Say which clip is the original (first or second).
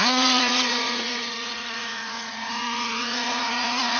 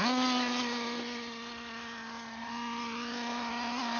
second